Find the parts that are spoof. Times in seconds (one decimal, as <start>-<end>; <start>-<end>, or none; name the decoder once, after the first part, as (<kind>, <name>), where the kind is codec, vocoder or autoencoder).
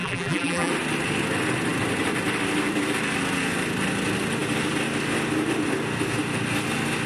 0.0-0.7 (vocoder, BigVGAN v2)